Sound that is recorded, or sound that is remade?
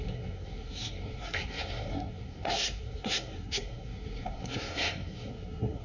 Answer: remade